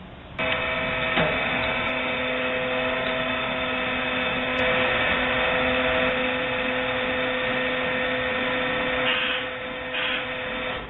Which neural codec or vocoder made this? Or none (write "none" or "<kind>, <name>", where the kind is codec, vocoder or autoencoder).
none